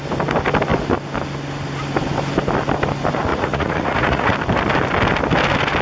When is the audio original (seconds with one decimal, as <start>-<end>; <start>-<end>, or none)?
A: 0.0-3.3; 4.3-5.8